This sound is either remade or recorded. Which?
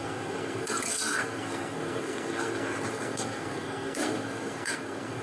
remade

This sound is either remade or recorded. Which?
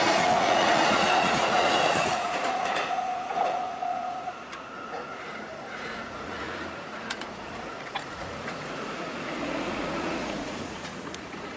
remade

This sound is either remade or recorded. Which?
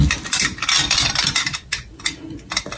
recorded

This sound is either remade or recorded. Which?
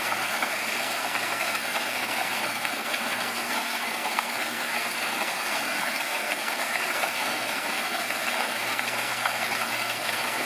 remade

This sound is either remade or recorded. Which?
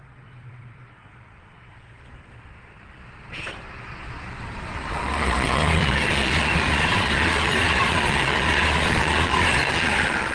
remade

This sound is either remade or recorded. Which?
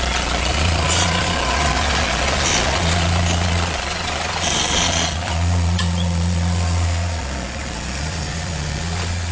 remade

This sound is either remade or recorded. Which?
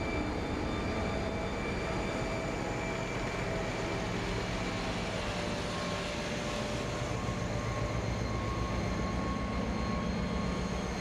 recorded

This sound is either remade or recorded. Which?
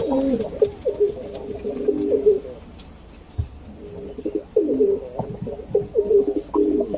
recorded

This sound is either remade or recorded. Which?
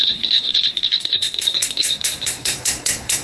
remade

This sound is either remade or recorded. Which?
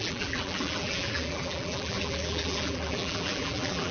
remade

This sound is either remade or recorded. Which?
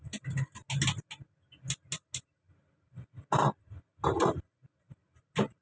recorded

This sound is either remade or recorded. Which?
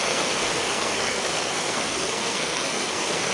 remade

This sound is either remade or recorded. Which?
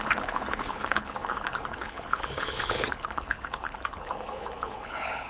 remade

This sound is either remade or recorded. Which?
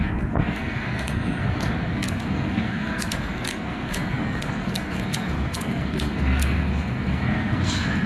remade